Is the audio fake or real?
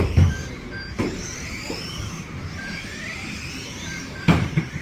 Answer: fake